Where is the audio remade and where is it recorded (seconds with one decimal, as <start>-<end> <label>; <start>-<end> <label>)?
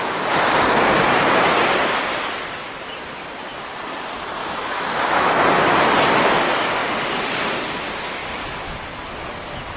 0.0-4.4 recorded; 4.4-5.3 remade; 5.3-9.8 recorded